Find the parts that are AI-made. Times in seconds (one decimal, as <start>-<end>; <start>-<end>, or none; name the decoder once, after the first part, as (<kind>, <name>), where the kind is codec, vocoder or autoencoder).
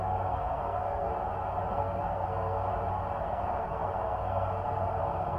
0.0-1.1 (codec, SNAC); 1.7-2.7; 3.2-5.4